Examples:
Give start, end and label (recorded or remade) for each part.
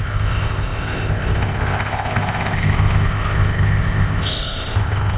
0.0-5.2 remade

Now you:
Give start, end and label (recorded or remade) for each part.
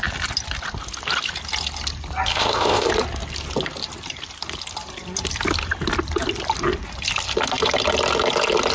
0.0-2.3 recorded; 2.3-2.9 remade; 2.9-8.7 recorded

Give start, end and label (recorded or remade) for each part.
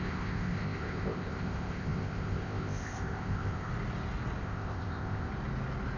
0.0-3.7 remade; 3.7-4.4 recorded; 4.4-5.3 remade; 5.3-6.0 recorded